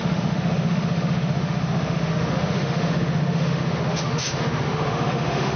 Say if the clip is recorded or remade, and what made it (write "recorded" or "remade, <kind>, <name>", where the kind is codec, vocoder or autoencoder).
remade, autoencoder, DAC-VAE